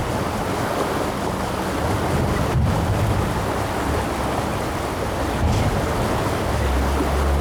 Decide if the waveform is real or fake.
real